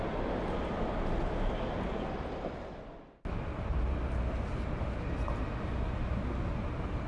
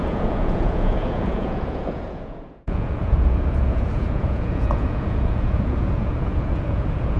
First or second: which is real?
first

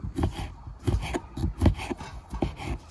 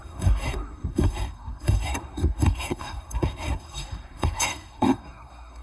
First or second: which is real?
first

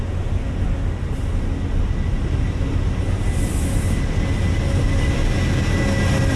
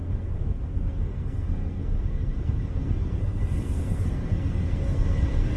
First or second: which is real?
first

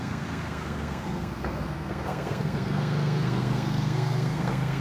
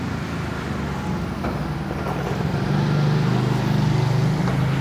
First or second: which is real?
second